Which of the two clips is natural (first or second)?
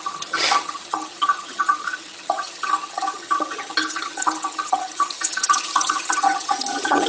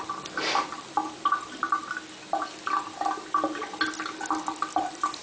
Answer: second